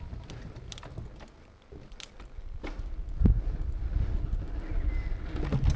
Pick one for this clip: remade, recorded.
recorded